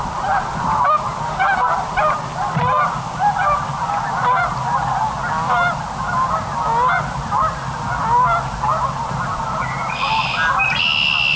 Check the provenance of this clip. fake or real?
real